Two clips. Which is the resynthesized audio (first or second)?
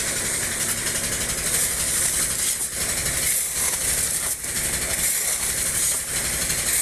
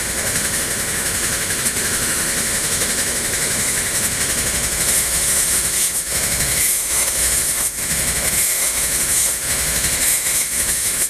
second